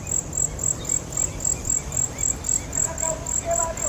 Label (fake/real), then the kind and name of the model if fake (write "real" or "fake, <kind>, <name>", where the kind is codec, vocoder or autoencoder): real